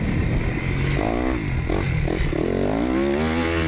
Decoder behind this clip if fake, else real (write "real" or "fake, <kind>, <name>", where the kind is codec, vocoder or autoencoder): real